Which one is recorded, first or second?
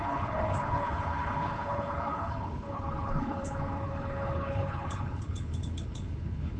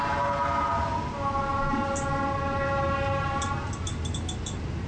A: second